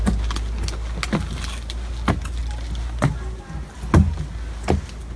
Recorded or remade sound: recorded